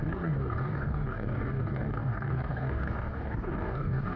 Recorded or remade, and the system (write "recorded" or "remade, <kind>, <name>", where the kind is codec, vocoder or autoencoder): remade, codec, DAC